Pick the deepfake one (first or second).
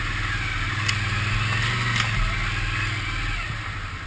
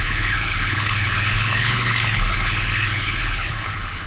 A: second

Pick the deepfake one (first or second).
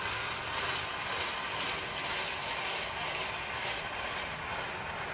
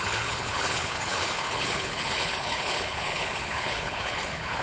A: second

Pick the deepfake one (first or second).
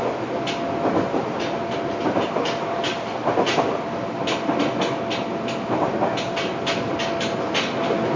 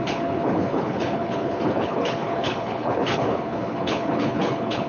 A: second